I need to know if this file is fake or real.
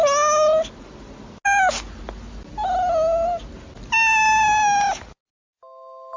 real